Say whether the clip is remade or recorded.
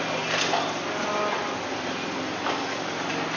recorded